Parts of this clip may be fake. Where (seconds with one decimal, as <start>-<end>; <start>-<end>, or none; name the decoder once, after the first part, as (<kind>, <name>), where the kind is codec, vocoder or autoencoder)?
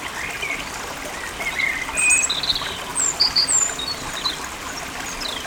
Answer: none